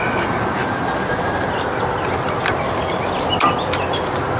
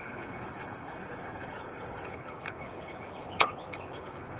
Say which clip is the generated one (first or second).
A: second